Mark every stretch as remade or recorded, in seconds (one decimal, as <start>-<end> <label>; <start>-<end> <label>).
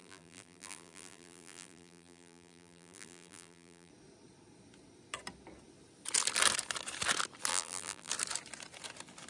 0.0-3.9 remade; 3.9-7.5 recorded; 7.5-8.1 remade; 8.1-9.3 recorded